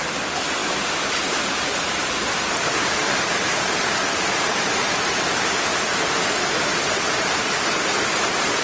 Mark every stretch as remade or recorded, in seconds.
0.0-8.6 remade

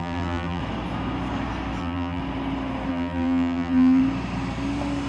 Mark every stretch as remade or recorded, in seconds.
0.0-0.6 remade; 0.6-1.8 recorded; 1.8-2.2 remade; 2.2-2.9 recorded; 2.9-4.0 remade; 4.0-5.1 recorded

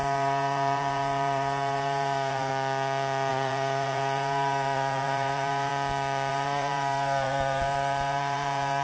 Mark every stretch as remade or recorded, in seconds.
0.0-2.5 remade; 2.5-3.3 recorded; 3.3-5.7 remade; 5.7-6.3 recorded; 6.3-8.8 remade

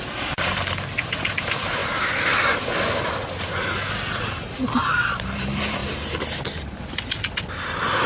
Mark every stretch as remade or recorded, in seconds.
0.0-1.8 remade; 1.8-4.2 recorded; 4.2-5.8 remade; 5.8-8.1 recorded